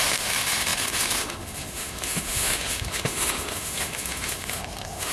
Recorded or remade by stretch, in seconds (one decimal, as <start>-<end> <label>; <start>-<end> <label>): 0.0-5.1 remade